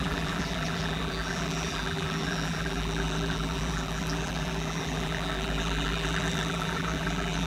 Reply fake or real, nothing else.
fake